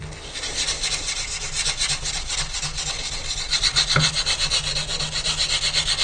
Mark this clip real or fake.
real